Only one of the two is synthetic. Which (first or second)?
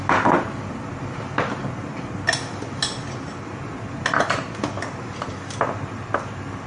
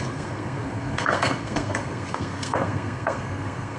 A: second